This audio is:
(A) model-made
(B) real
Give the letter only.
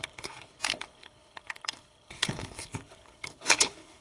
A